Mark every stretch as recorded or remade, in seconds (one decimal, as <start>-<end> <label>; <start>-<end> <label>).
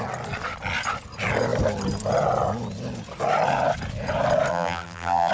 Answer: 0.0-4.5 recorded; 4.5-5.3 remade